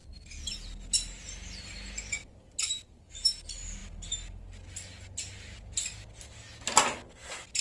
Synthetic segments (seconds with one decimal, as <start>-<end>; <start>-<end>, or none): none

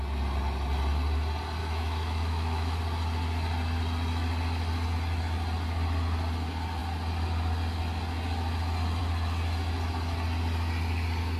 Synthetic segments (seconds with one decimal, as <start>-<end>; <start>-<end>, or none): 1.6-2.8